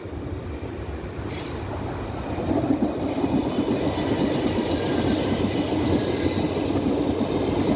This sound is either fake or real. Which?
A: real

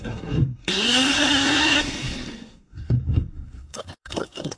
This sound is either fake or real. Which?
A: fake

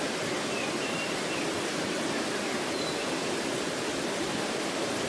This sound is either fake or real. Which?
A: real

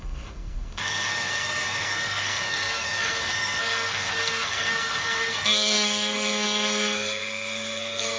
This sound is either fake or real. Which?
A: fake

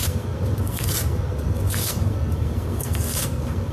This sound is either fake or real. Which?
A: fake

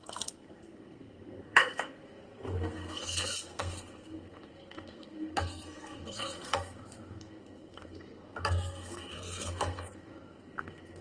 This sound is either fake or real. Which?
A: fake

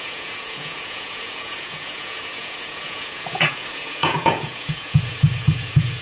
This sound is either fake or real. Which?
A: fake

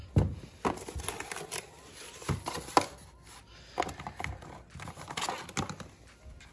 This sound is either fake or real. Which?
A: real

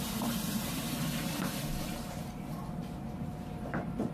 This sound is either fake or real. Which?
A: fake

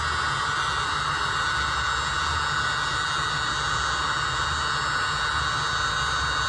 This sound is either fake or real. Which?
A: real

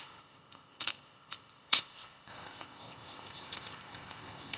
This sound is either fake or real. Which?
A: fake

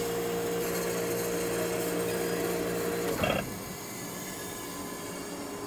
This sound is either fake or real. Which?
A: real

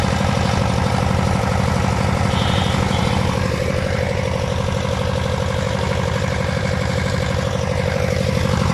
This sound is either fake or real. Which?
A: fake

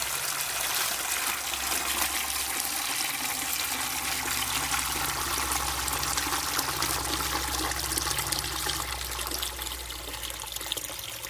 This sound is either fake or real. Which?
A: real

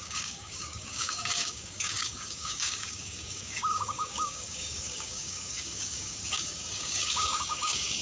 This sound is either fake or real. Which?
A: fake